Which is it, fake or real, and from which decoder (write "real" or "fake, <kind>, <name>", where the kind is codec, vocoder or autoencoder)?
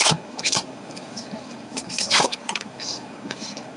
fake, codec, SNAC